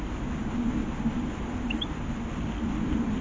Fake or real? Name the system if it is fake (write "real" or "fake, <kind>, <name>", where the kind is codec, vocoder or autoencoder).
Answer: real